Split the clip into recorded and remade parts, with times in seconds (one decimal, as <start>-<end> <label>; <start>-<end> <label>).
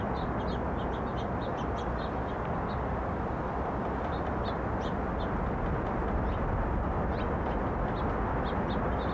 0.0-1.1 recorded; 1.1-5.4 remade; 5.4-9.1 recorded